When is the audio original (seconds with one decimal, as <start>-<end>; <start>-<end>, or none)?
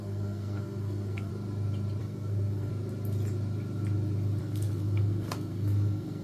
1.3-2.0; 2.7-4.4